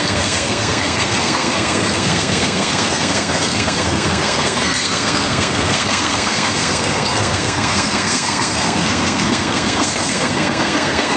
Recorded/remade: remade